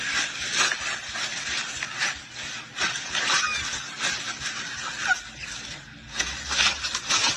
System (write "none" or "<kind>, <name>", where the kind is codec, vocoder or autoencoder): none